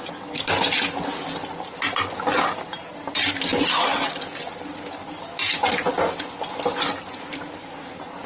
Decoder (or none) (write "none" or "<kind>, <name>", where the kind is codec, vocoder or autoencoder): none